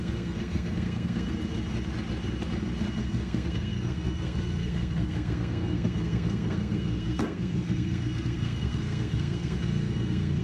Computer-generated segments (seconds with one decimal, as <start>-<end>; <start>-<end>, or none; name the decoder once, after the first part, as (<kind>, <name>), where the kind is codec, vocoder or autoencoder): 0.0-1.4 (codec, SNAC); 3.0-10.4